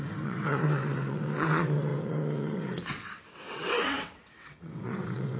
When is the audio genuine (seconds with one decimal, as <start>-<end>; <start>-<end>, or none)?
none